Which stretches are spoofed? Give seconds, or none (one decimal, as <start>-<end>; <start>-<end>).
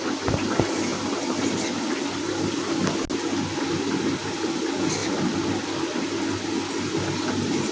none